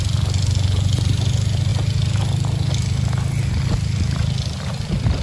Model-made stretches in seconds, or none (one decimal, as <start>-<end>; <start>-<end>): none